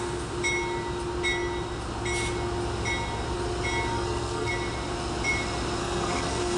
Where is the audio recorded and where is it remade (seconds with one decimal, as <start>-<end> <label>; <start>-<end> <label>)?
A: 0.0-3.9 recorded; 3.9-4.5 remade; 4.5-5.8 recorded; 5.8-6.6 remade